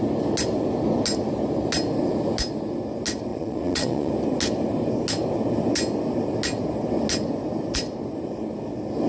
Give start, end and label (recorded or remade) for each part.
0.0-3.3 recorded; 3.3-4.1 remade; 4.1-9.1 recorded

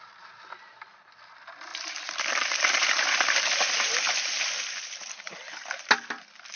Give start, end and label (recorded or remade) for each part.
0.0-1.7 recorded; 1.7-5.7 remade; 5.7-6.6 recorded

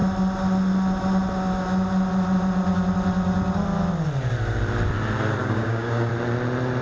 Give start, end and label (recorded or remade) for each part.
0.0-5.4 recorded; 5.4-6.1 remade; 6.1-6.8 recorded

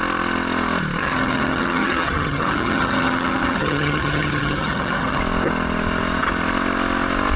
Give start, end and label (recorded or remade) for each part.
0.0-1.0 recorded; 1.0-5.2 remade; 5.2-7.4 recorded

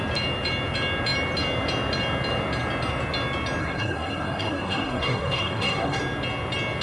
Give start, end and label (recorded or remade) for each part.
0.0-3.6 recorded; 3.6-6.0 remade; 6.0-6.8 recorded

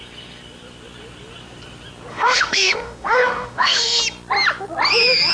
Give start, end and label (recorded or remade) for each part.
0.0-2.1 recorded; 2.1-4.0 remade; 4.0-5.3 recorded